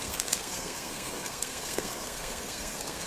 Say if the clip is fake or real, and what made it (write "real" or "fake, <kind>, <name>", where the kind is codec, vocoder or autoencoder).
fake, codec, SNAC